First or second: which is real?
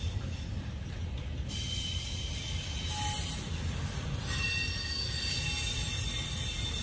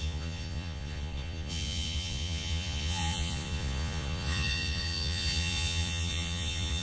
first